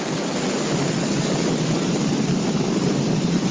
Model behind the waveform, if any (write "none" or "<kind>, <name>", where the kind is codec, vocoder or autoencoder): none